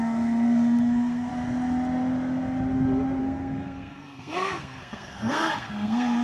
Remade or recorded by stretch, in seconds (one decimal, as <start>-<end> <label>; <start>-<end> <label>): 0.0-1.3 remade; 1.3-3.2 recorded; 3.2-6.2 remade